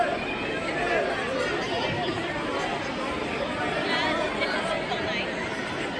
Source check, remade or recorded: recorded